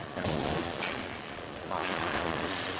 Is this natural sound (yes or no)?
no